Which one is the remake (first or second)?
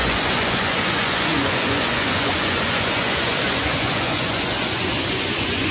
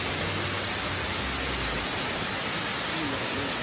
first